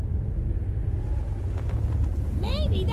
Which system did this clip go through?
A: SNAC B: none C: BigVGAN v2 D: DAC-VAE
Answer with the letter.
B